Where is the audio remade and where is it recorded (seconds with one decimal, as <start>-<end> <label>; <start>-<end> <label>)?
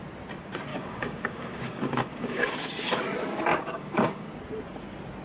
0.0-0.7 recorded; 0.7-2.5 remade; 2.5-3.5 recorded; 3.5-4.3 remade; 4.3-5.2 recorded